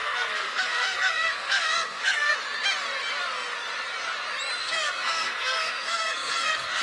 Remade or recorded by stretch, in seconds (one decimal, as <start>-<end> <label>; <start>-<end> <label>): 0.0-2.3 remade; 2.3-4.6 recorded; 4.6-6.8 remade